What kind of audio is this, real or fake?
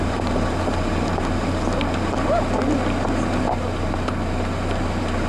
real